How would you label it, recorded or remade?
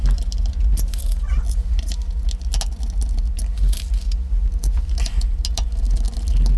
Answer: recorded